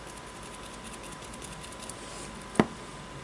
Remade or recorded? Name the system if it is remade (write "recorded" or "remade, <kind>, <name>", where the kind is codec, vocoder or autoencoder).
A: recorded